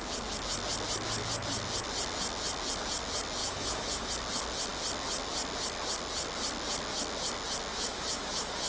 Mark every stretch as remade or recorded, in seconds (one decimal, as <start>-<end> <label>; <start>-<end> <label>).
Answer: 0.0-3.4 recorded; 3.4-4.1 remade; 4.1-7.7 recorded; 7.7-8.7 remade